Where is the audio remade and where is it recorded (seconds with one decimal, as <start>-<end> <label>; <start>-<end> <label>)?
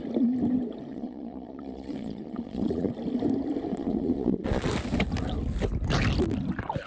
0.0-0.9 recorded; 0.9-2.9 remade; 2.9-3.7 recorded; 3.7-4.7 remade; 4.7-6.9 recorded